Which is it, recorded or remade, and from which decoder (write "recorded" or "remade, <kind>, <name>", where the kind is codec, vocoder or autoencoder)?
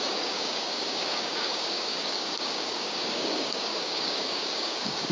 remade, codec, DAC